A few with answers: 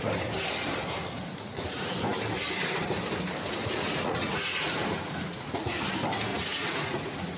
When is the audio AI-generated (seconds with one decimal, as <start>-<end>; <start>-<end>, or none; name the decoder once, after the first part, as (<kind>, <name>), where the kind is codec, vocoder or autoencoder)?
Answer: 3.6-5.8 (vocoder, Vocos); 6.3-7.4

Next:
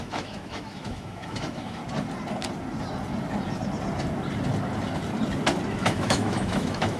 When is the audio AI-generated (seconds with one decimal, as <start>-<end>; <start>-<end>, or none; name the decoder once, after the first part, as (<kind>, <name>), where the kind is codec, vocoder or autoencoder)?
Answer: 0.0-1.8 (autoencoder, DAC-VAE); 5.7-7.0

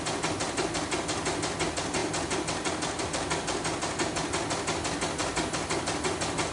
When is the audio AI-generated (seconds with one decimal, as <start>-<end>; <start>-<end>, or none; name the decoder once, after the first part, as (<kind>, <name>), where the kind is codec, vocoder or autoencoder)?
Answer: none

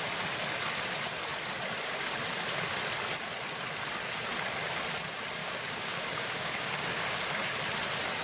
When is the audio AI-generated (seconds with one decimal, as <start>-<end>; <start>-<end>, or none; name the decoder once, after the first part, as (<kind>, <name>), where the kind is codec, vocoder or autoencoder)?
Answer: 5.4-7.2 (codec, DAC)